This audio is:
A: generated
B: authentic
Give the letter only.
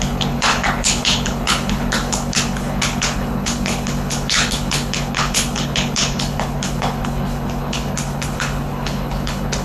A